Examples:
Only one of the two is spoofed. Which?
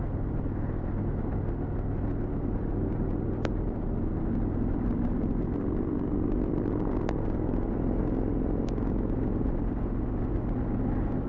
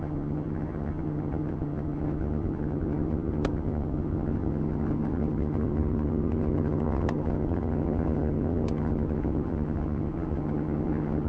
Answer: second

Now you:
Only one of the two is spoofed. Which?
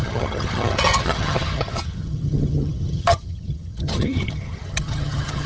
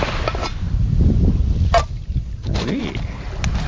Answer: first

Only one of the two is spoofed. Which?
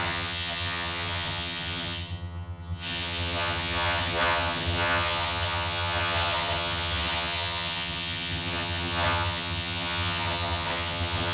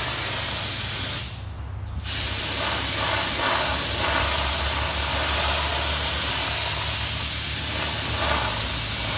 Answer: first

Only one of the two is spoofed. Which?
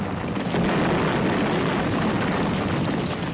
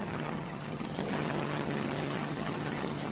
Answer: second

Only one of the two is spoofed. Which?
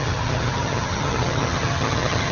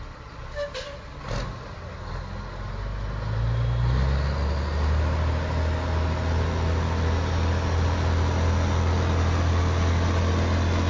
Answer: first